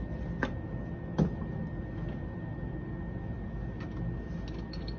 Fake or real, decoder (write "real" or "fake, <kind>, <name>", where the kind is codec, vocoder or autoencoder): real